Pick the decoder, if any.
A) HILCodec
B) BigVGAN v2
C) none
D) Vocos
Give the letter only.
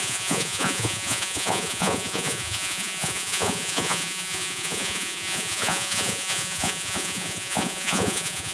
D